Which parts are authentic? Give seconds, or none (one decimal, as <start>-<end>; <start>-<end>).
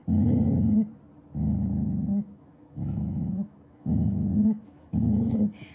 0.0-2.1